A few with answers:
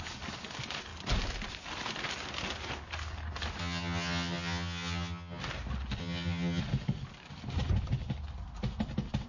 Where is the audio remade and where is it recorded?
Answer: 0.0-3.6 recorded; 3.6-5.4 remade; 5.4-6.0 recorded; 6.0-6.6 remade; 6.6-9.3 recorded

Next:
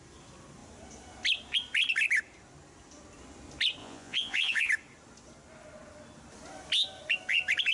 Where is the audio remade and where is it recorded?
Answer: 0.0-3.8 recorded; 3.8-4.7 remade; 4.7-7.7 recorded